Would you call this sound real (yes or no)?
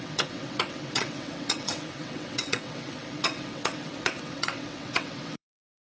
no